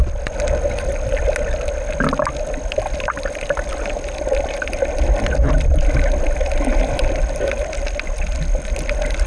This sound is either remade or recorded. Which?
recorded